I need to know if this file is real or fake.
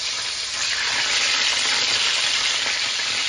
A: real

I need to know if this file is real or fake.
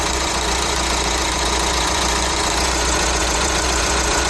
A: fake